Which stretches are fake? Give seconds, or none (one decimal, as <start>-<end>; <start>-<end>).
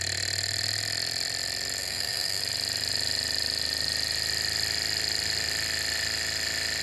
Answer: 1.8-2.4